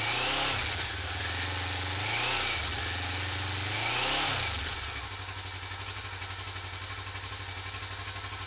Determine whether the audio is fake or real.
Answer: real